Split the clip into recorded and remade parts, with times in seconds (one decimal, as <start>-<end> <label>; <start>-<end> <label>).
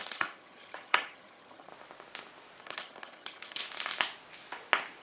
0.0-1.7 remade; 1.7-2.6 recorded; 2.6-3.6 remade; 3.6-5.0 recorded